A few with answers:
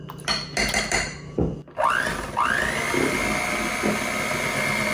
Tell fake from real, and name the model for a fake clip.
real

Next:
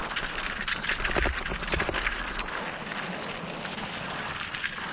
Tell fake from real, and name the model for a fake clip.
real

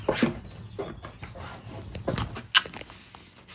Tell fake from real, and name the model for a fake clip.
real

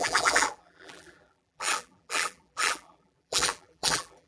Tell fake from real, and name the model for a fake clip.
fake, vocoder, BigVGAN v2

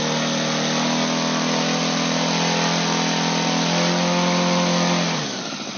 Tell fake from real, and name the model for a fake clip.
real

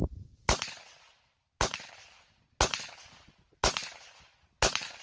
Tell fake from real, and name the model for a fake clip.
real